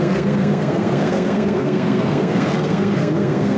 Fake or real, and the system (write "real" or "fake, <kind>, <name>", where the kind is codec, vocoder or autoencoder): fake, codec, SNAC